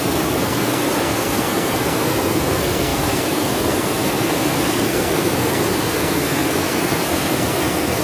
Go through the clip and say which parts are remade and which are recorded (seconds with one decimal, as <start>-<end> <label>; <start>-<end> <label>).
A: 0.0-8.0 remade